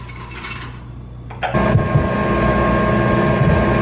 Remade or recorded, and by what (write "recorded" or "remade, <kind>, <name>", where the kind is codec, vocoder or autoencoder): recorded